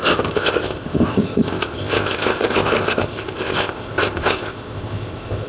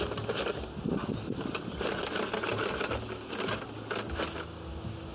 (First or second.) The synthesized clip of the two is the first